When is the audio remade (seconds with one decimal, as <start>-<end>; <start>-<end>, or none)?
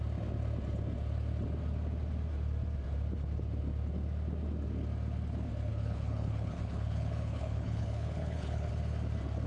5.7-8.7